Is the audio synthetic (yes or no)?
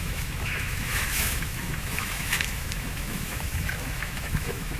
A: yes